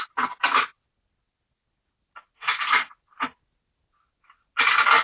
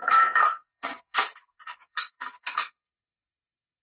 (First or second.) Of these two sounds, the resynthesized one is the second